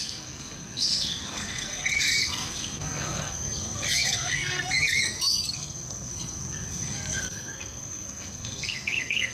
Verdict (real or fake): fake